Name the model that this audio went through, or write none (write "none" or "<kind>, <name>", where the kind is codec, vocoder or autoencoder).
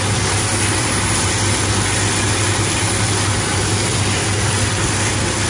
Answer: none